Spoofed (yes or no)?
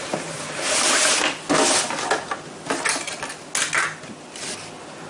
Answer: no